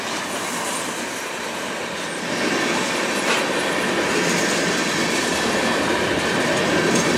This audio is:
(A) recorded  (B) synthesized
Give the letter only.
A